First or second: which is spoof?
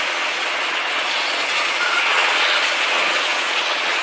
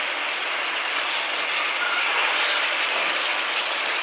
first